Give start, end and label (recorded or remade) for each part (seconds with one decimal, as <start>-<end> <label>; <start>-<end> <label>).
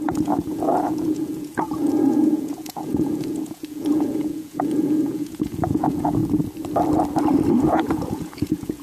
0.0-6.2 remade; 6.2-7.5 recorded; 7.5-8.8 remade